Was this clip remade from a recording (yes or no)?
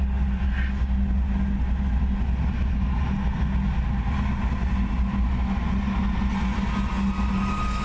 no